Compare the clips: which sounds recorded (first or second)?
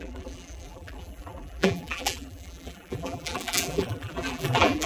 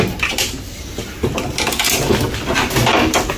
second